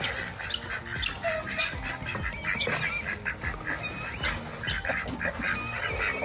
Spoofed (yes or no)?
no